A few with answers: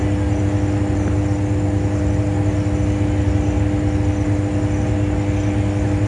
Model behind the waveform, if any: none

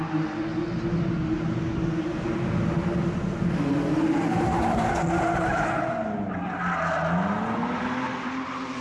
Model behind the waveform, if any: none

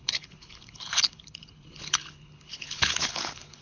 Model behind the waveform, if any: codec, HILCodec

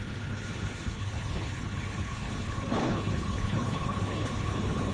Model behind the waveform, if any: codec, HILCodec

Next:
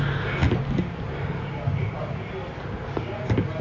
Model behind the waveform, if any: none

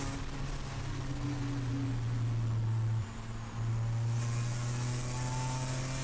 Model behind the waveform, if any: none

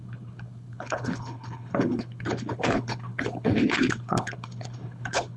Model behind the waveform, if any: codec, HILCodec